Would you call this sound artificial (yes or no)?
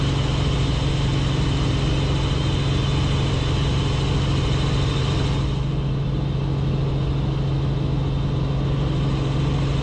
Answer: no